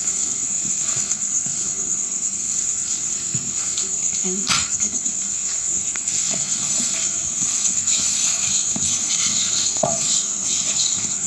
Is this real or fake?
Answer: fake